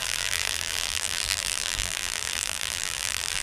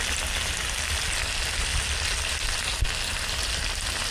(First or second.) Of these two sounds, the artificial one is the first